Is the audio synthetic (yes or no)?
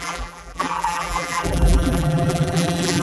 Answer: yes